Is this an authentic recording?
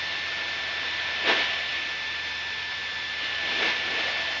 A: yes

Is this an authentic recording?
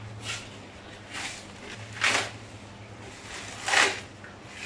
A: yes